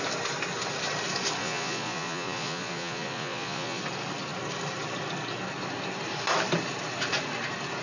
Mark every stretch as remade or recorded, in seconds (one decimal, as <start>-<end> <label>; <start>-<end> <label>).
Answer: 0.0-1.4 recorded; 1.4-3.8 remade; 3.8-7.8 recorded